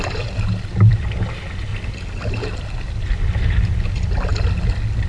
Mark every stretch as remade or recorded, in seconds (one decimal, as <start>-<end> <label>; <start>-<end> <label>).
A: 0.0-1.7 remade; 1.7-2.6 recorded; 2.6-4.3 remade; 4.3-5.1 recorded